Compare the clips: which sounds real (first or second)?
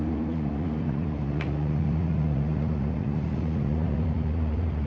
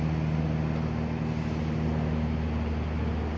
second